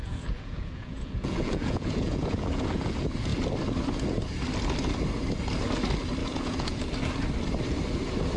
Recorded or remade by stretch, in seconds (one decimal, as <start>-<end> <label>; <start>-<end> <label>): 0.0-2.9 remade; 2.9-6.2 recorded; 6.2-6.8 remade; 6.8-8.4 recorded